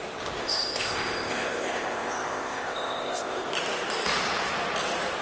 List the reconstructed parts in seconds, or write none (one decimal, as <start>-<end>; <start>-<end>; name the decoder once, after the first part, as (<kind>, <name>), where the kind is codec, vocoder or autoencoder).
0.4-3.5 (codec, ZipCodec)